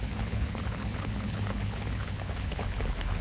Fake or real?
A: fake